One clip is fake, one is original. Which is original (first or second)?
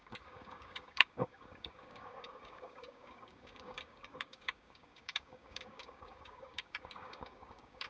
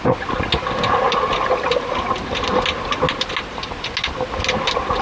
second